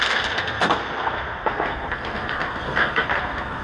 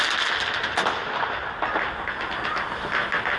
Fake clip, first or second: first